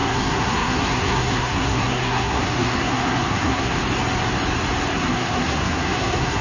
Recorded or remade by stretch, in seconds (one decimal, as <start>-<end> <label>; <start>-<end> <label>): 0.0-3.8 remade; 3.8-4.9 recorded; 4.9-6.4 remade